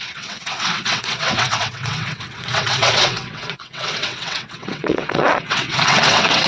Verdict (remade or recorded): remade